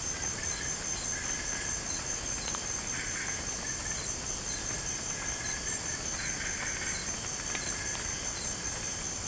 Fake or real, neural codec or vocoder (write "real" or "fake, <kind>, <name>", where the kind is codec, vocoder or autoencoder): real